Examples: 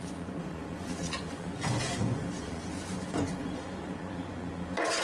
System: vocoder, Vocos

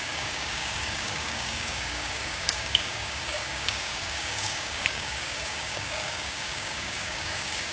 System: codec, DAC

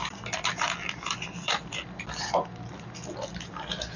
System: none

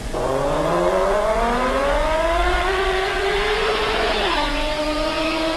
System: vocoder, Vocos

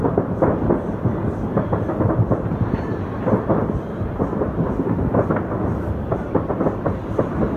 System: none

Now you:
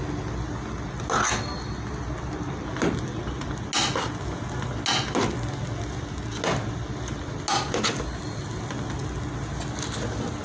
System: none